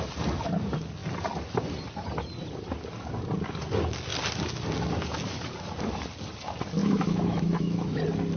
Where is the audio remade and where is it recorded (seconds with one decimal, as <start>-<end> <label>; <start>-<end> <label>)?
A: 0.0-6.8 recorded; 6.8-8.0 remade; 8.0-8.4 recorded